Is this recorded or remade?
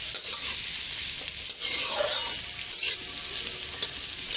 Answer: recorded